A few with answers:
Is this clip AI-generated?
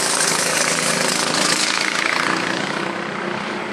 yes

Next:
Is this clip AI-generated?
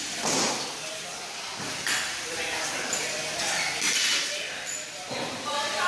no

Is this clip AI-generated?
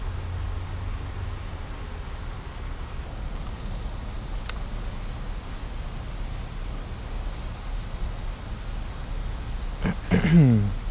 no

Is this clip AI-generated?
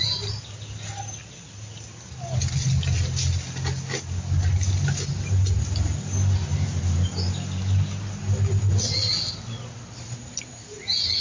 no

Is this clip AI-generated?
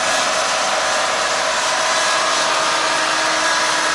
no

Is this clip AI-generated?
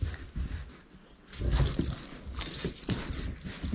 no